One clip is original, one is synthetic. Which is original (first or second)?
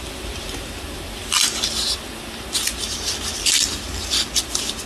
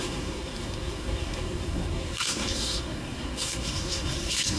first